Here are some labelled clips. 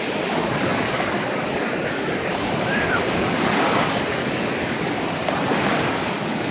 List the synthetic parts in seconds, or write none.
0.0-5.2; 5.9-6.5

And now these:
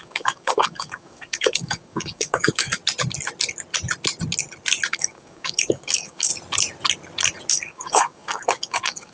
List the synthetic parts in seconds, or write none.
0.0-2.8; 4.9-6.3; 7.5-9.1